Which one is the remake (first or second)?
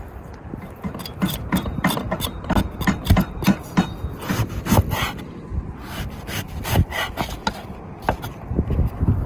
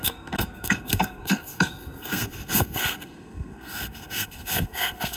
second